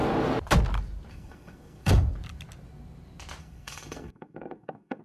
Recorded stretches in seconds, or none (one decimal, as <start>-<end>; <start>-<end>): 0.0-1.1; 1.9-3.4